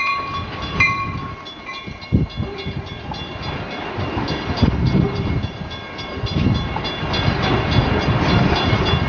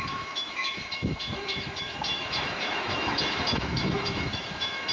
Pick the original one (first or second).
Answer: first